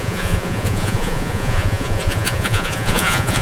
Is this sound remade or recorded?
remade